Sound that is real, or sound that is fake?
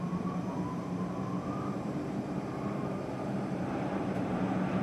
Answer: fake